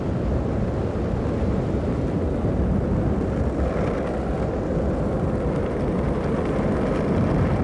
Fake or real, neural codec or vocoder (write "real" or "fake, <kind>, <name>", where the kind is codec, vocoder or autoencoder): real